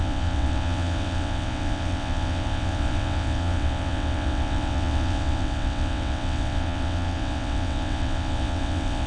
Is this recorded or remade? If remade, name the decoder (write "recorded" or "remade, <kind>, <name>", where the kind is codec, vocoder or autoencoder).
remade, vocoder, WaveNeXt